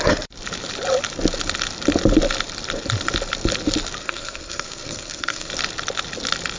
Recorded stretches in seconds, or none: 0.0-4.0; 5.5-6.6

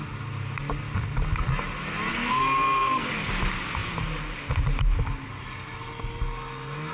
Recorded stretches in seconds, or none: 0.0-2.1; 3.3-6.9

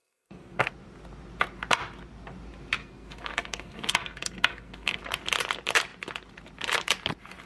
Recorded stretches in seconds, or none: 0.7-2.8; 5.0-7.5